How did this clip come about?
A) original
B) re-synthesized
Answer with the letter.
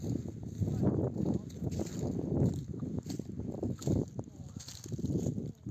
A